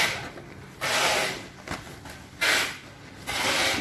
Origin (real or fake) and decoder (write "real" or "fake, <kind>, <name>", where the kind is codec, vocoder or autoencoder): real